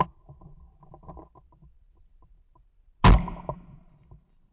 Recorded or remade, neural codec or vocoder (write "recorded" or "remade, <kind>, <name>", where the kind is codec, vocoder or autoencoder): recorded